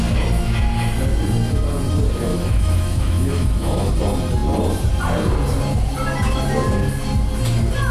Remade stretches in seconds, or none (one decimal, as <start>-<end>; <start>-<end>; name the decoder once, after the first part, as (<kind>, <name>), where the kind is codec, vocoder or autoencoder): 2.3-3.9 (autoencoder, DAC-VAE)